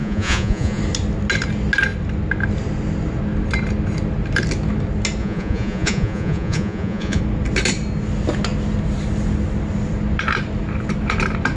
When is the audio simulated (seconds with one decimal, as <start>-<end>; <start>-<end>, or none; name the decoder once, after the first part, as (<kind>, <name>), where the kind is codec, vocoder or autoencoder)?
0.0-0.8 (vocoder, Vocos); 5.2-7.2